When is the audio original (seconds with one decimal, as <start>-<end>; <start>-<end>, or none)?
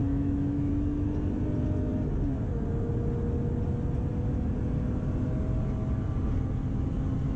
0.7-7.4